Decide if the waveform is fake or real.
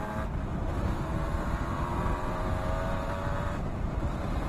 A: fake